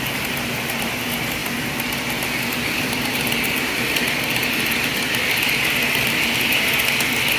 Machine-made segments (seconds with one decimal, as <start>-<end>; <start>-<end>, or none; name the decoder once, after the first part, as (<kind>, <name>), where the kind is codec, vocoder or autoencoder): none

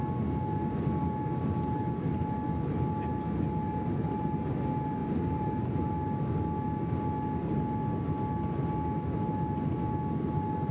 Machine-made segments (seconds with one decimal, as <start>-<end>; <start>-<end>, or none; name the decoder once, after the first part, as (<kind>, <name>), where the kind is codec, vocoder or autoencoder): 5.0-5.6 (vocoder, BigVGAN v2)

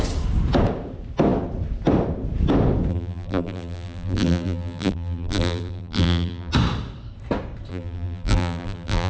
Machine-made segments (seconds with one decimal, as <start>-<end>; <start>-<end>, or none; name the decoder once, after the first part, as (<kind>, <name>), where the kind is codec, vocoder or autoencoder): 2.9-6.5 (vocoder, BigVGAN v2); 7.7-9.1

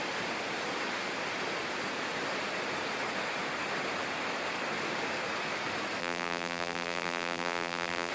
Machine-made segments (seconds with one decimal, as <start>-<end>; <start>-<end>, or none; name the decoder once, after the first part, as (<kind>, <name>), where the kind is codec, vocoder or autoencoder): 6.0-8.1 (vocoder, BigVGAN v2)

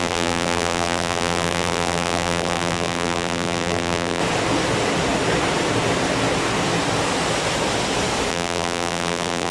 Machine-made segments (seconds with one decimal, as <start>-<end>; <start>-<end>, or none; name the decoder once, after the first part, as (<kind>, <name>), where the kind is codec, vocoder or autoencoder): 0.0-4.2 (vocoder, BigVGAN v2); 8.3-9.5